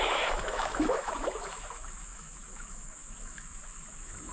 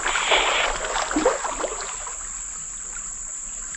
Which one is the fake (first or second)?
first